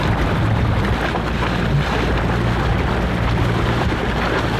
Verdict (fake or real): real